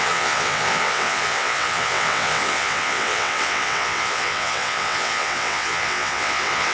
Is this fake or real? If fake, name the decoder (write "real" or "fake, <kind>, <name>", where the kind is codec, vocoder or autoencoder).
fake, vocoder, WaveNeXt